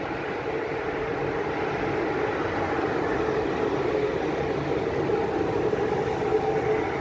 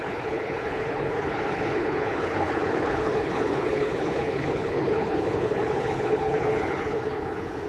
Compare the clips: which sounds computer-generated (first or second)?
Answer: second